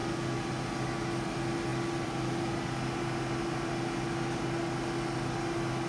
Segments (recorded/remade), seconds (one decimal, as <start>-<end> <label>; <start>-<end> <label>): 0.0-5.9 remade